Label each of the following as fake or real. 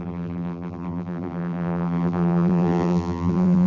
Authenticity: fake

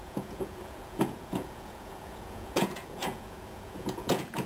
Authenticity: fake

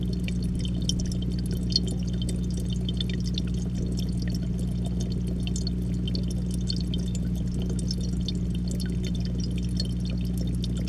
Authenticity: real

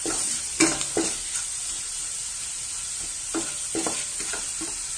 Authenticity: real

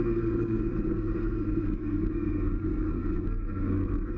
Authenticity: fake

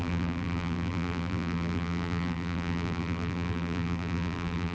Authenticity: fake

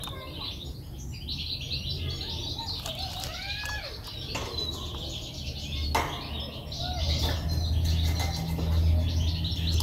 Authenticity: real